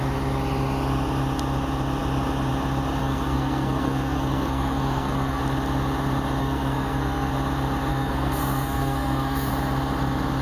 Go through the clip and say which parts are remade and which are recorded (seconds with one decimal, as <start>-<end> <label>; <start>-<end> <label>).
0.0-3.0 recorded; 3.0-5.4 remade; 5.4-6.4 recorded; 6.4-7.3 remade; 7.3-7.9 recorded; 7.9-9.5 remade; 9.5-10.4 recorded